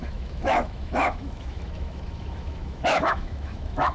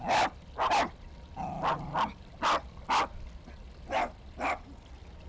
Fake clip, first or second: first